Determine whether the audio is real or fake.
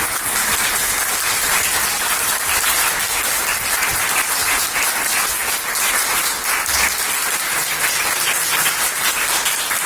real